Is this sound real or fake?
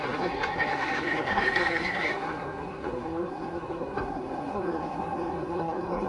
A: fake